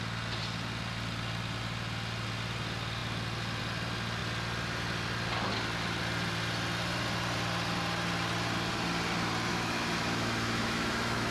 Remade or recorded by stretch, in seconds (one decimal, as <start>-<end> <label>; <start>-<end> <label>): 0.0-9.5 recorded; 9.5-11.3 remade